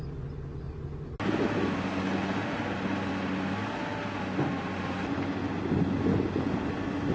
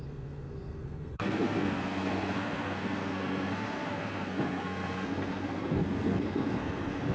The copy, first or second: second